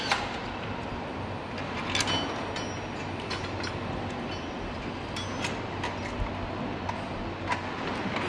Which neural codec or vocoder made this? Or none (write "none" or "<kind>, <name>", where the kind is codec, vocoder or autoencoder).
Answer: none